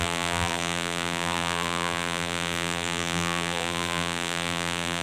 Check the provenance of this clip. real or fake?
fake